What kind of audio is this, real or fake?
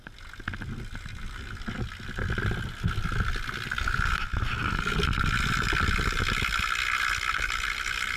real